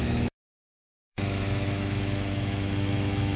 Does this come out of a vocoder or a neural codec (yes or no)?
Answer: yes